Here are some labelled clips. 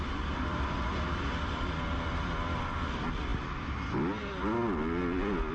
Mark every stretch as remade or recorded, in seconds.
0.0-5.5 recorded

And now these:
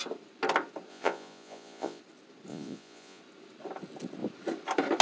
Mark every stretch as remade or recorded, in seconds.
0.0-0.9 recorded; 0.9-2.0 remade; 2.0-2.5 recorded; 2.5-3.2 remade; 3.2-5.0 recorded

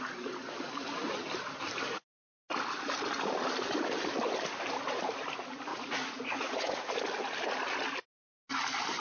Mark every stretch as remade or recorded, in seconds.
0.0-5.7 recorded; 5.7-6.9 remade; 6.9-9.0 recorded

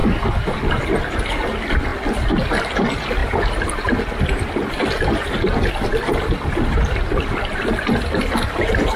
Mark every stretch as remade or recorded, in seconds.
0.0-9.0 recorded

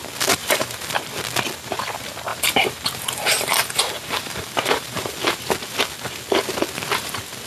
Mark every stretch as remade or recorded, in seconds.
0.0-0.4 recorded; 0.4-1.1 remade; 1.1-2.3 recorded; 2.3-5.1 remade; 5.1-7.5 recorded

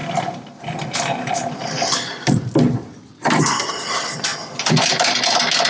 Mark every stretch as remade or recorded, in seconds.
0.0-5.7 recorded

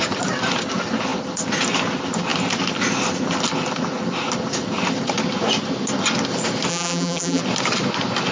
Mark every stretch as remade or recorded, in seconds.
0.0-6.7 recorded; 6.7-7.4 remade; 7.4-8.3 recorded

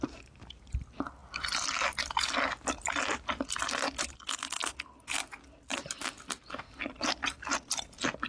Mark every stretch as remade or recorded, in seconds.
0.0-8.3 recorded